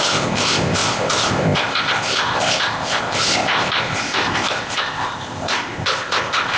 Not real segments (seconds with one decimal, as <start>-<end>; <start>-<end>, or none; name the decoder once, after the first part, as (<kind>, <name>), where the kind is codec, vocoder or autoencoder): 0.0-6.6 (codec, ZipCodec)

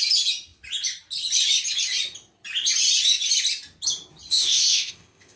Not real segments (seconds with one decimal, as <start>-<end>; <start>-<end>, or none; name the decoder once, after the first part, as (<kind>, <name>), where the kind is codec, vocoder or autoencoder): 4.3-5.4 (codec, ZipCodec)

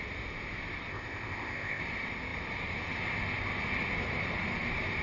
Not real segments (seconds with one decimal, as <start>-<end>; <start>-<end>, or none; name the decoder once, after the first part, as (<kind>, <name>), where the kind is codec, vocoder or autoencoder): 0.9-1.8 (codec, ZipCodec)

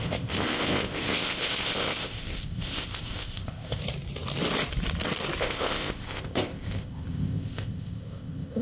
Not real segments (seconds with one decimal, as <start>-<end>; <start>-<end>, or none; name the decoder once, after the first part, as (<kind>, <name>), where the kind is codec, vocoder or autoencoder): 0.0-3.8 (codec, ZipCodec); 5.4-8.6

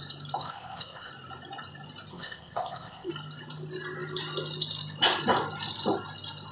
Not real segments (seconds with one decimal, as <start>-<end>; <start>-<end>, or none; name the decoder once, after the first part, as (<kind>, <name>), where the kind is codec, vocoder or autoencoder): 0.4-1.1 (codec, ZipCodec); 2.1-3.1

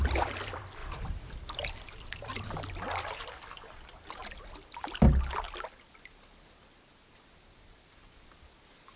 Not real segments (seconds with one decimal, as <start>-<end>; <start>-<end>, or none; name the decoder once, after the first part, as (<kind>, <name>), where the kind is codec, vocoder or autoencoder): none

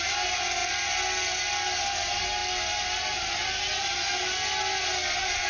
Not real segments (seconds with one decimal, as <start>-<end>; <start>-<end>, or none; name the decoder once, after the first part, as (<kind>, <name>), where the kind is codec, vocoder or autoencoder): none